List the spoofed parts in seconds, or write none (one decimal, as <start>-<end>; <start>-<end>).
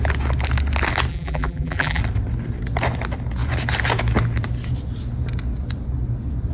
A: 1.1-2.0